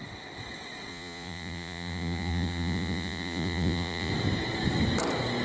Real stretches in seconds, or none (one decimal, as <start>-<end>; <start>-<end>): 0.0-0.9; 4.1-5.4

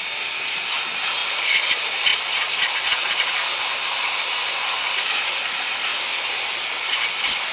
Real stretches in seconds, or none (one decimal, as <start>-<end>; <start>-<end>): 0.0-7.5

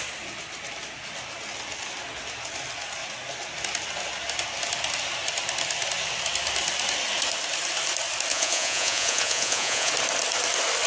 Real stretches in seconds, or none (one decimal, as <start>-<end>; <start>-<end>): 0.0-8.3; 9.9-10.9

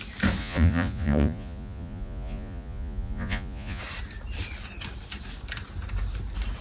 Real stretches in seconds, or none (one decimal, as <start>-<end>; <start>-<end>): 0.0-0.4; 3.8-6.6

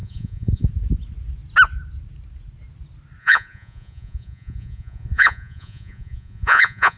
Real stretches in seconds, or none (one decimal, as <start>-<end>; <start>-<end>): 0.7-3.2

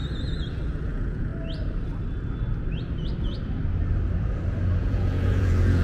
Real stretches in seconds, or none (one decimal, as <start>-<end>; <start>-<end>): 0.0-0.9; 1.3-4.8

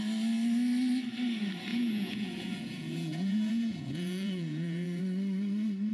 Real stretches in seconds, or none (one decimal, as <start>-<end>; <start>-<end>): 0.0-1.7; 5.0-5.9

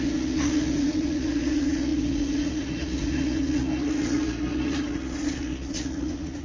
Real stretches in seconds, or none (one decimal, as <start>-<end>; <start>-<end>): none